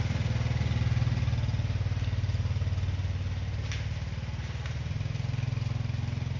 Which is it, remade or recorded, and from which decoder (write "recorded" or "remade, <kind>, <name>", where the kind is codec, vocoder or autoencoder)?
recorded